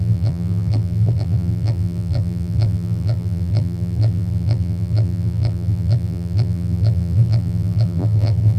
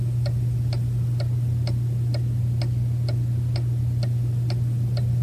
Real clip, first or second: second